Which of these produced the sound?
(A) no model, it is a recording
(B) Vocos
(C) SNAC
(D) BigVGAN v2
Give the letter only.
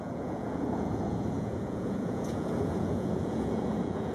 B